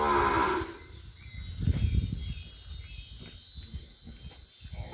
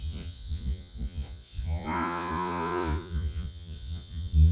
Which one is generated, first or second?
second